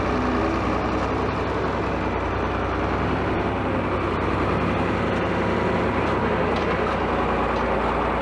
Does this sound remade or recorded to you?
recorded